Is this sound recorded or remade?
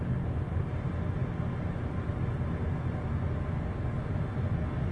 recorded